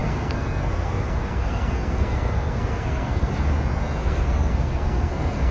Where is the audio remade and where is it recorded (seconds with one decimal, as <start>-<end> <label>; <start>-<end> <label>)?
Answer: 0.0-3.3 remade; 3.3-4.0 recorded; 4.0-5.5 remade